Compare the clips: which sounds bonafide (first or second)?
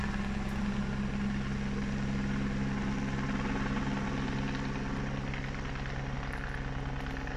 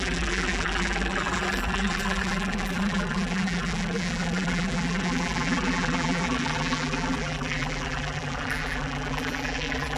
first